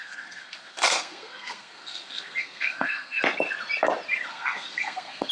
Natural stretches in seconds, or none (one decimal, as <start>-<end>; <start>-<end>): 3.2-4.3